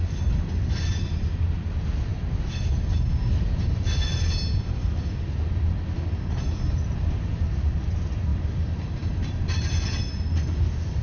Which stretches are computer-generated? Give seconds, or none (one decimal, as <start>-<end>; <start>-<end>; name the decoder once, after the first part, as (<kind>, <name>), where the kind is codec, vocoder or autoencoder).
none